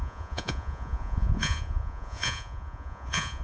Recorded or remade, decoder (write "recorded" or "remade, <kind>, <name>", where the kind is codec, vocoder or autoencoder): remade, vocoder, Vocos